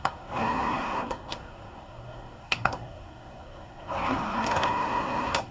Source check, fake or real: fake